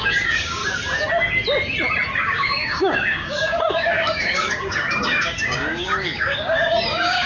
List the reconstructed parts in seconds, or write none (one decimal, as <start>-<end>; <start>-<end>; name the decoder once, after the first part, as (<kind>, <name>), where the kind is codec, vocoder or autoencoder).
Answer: 0.0-0.6 (codec, DAC); 2.2-7.3